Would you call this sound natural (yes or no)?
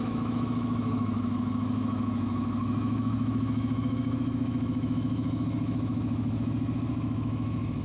no